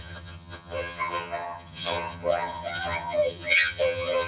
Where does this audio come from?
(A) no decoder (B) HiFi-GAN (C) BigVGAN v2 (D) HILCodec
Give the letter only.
B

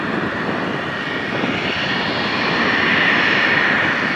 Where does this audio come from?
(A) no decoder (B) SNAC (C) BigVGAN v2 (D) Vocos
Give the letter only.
A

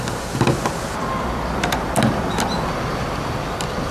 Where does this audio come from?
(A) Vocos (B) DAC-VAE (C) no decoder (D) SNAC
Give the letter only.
C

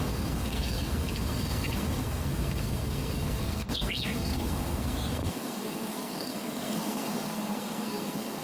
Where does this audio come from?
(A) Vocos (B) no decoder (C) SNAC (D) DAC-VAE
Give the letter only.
C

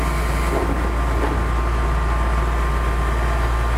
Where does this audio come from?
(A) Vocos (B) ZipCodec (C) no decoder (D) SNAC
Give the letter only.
C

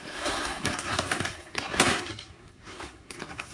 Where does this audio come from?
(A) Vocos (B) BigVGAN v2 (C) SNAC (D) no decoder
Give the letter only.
C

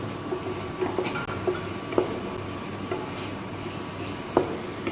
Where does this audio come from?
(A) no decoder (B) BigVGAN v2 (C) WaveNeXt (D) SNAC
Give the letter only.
A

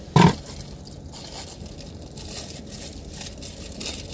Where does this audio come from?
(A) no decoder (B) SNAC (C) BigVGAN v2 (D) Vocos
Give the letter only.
A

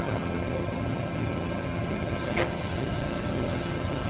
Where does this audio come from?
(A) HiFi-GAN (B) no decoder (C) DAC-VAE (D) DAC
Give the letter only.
A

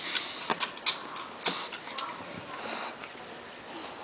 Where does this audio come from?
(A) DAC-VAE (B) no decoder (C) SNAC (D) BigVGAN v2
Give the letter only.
B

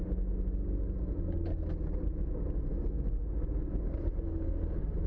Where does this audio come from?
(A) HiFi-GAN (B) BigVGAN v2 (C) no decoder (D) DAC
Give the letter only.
C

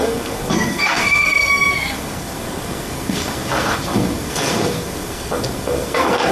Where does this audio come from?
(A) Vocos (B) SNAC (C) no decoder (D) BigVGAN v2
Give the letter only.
B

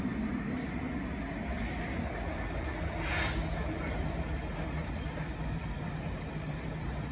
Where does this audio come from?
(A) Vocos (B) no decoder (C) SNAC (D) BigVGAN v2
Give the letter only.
B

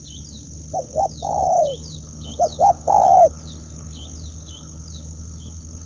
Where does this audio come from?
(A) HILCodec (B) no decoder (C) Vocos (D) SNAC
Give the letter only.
A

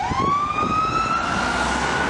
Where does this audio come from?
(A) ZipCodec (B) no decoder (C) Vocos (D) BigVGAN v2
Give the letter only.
B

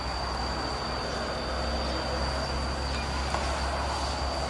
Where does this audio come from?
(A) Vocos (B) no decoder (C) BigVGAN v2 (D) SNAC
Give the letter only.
B